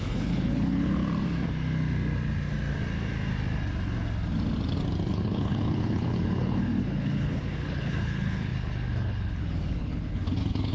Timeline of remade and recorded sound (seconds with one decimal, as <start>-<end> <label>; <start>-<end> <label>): 0.0-1.0 remade; 1.0-5.1 recorded; 5.1-10.7 remade

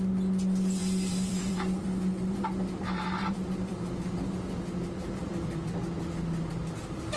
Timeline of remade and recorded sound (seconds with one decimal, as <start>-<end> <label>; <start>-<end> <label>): 0.0-0.8 recorded; 0.8-4.2 remade; 4.2-5.2 recorded; 5.2-5.8 remade; 5.8-7.2 recorded

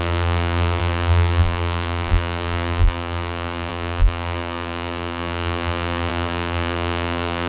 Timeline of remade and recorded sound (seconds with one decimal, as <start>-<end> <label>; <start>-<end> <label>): 0.0-7.5 remade

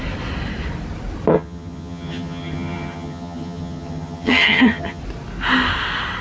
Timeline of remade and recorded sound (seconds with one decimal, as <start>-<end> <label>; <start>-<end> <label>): 0.0-1.3 recorded; 1.3-5.0 remade; 5.0-6.2 recorded

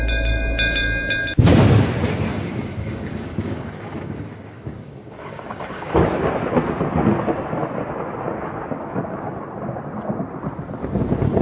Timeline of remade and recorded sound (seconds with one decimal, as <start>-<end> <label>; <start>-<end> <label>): 0.0-2.3 recorded; 2.3-6.0 remade; 6.0-11.4 recorded

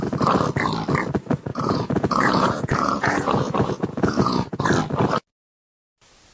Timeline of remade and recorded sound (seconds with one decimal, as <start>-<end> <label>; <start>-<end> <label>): 0.0-1.5 recorded; 1.5-4.6 remade; 4.6-6.3 recorded